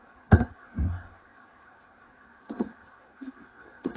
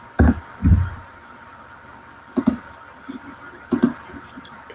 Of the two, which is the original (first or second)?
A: second